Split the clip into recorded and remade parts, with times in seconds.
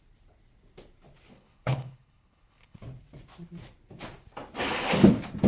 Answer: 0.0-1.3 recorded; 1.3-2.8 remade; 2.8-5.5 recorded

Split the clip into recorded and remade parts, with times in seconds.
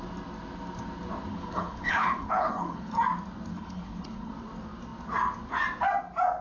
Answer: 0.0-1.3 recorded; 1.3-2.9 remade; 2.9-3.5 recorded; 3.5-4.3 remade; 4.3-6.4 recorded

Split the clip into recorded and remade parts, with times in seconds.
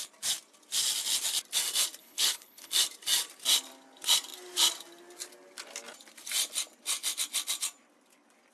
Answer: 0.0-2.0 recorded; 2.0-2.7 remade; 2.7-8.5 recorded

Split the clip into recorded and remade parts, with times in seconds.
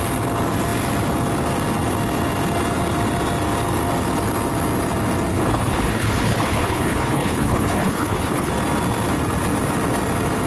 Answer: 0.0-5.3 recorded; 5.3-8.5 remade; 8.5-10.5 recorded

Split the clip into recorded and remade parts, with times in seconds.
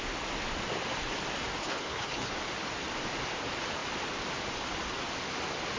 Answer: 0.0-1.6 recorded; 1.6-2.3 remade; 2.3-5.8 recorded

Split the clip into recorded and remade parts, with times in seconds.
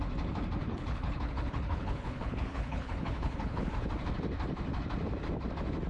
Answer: 0.0-0.6 recorded; 0.6-3.9 remade; 3.9-5.9 recorded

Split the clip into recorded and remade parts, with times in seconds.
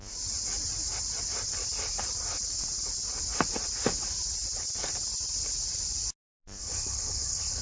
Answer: 0.0-6.6 recorded; 6.6-7.6 remade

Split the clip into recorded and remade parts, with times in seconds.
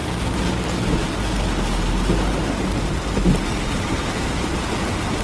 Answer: 0.0-5.2 recorded